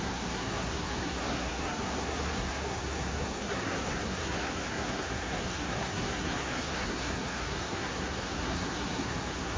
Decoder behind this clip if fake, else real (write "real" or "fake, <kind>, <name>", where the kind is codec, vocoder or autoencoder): fake, codec, SNAC